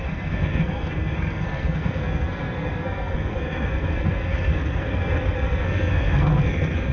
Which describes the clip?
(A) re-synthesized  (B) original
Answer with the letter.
A